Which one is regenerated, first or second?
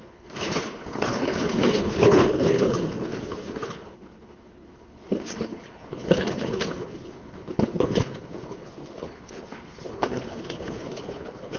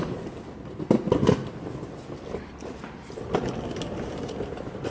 first